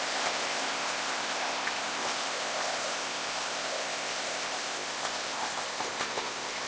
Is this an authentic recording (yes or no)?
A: no